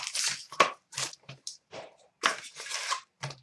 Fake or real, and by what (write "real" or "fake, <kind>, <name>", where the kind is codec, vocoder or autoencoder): fake, vocoder, BigVGAN v2